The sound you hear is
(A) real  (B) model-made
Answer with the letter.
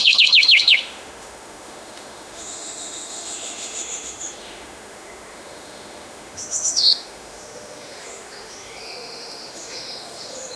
B